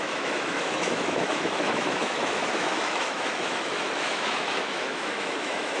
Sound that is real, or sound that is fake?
fake